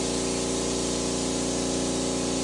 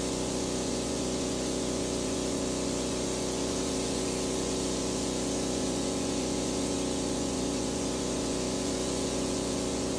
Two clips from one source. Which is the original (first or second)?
first